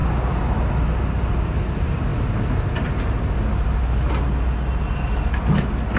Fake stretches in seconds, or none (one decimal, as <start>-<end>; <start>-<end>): none